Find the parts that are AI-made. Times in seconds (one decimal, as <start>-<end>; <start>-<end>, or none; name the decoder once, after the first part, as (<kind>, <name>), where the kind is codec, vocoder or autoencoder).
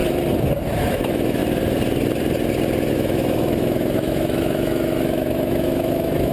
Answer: 0.8-1.4 (autoencoder, DAC-VAE); 2.9-6.3